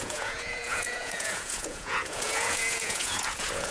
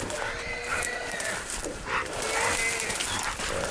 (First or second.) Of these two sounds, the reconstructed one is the first